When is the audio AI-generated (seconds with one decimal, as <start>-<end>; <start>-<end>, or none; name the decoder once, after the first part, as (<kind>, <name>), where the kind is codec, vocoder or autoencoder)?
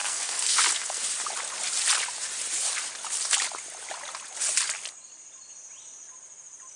0.0-1.0 (codec, SNAC)